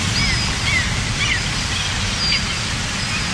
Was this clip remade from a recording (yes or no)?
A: no